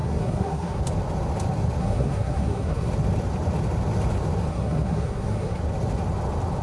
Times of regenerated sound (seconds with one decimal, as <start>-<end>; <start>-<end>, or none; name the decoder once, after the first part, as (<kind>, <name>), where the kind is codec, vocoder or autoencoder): 0.0-0.8 (codec, SNAC); 1.8-2.9; 4.5-5.6